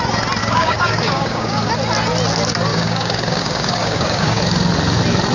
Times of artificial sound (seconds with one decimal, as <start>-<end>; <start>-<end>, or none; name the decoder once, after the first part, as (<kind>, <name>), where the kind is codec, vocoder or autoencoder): 0.4-1.7 (codec, DAC); 2.7-4.4

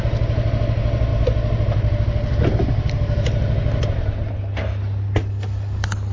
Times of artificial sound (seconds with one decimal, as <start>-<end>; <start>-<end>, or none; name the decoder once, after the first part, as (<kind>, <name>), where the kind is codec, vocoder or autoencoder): none

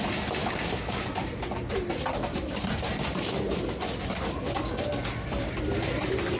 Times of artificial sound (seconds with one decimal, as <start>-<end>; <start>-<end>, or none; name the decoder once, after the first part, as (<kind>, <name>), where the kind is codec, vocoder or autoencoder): 0.4-1.0 (codec, DAC)

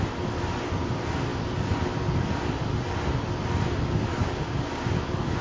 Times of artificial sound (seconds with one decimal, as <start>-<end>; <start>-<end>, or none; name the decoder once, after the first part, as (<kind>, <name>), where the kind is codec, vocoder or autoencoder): 4.2-4.9 (codec, DAC)